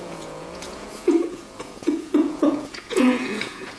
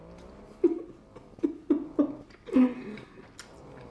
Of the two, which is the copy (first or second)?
first